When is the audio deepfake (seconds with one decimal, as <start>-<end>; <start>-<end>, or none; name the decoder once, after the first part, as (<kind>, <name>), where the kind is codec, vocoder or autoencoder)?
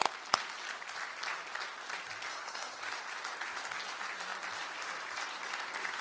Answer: 2.3-2.8 (codec, SNAC)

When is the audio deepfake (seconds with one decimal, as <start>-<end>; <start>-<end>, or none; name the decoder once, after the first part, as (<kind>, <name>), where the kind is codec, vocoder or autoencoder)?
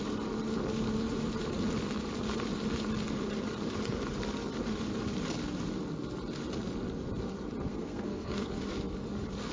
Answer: 7.7-8.5 (codec, SNAC)